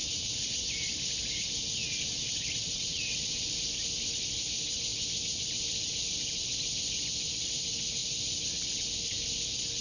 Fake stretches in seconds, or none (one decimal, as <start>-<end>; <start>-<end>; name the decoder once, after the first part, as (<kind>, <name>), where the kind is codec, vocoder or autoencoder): 0.0-0.7 (vocoder, WaveNeXt); 1.8-3.5